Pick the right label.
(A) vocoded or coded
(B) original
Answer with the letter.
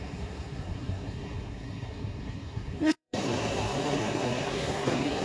A